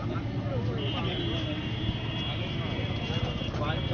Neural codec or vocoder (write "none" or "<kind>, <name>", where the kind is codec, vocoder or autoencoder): none